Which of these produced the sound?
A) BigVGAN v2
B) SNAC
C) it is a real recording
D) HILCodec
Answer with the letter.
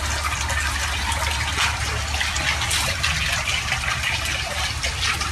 C